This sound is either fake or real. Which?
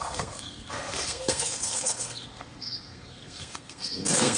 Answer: fake